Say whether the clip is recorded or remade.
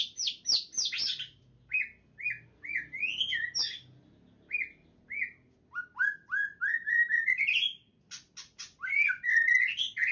recorded